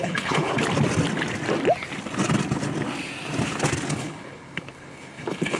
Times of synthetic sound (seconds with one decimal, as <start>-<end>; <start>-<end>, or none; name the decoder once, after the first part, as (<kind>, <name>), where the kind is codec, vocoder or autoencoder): 0.0-0.5 (codec, HILCodec); 3.9-5.6